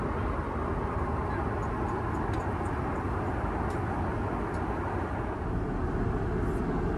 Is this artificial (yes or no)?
no